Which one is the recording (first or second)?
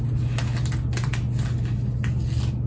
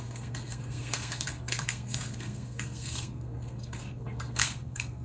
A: first